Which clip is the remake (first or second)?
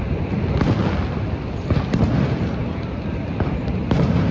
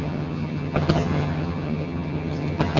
second